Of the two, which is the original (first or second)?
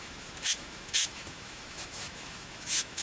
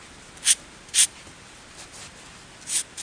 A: second